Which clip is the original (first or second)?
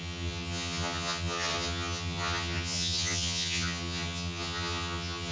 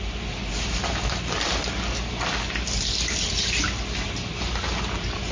second